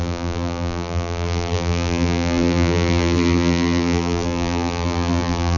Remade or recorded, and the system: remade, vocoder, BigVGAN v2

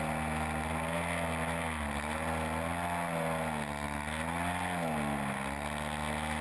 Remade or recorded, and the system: recorded